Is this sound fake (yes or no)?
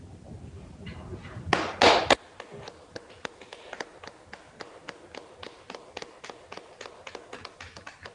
no